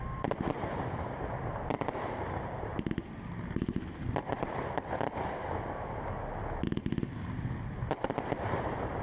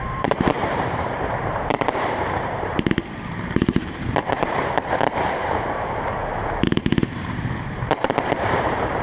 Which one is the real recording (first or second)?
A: first